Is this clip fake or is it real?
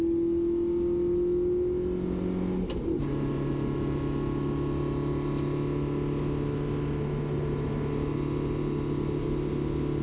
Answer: real